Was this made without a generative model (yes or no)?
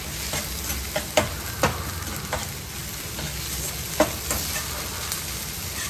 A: yes